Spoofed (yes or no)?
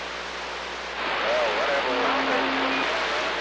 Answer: no